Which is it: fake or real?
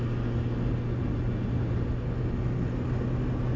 real